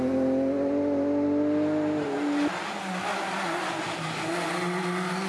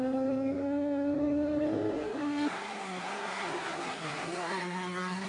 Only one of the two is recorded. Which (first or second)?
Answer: first